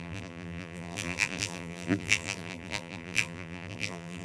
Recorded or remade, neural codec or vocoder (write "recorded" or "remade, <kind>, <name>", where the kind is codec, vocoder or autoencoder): remade, vocoder, BigVGAN v2